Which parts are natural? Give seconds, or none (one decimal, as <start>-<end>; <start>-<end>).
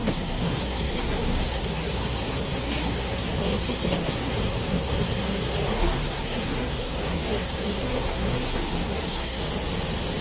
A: 9.4-10.2